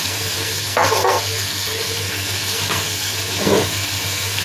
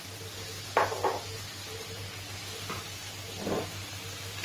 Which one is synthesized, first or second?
first